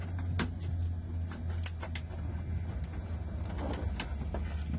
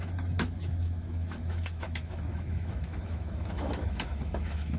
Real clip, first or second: first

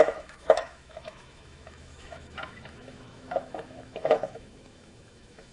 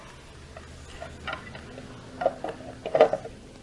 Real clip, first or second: second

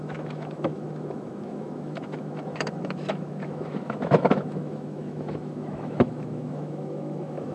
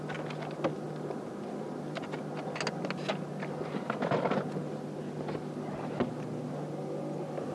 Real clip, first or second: second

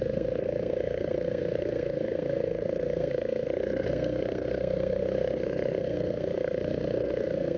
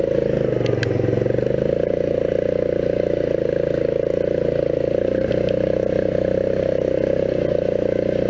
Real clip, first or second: second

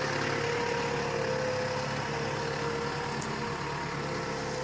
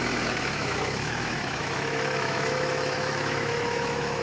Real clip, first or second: first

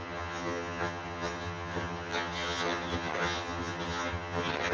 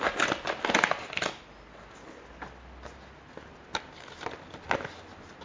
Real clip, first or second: second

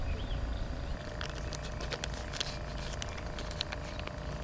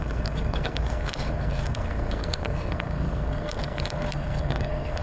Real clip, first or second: first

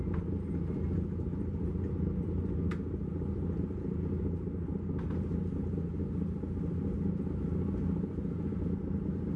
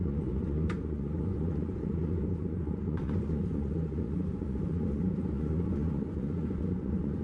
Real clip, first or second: first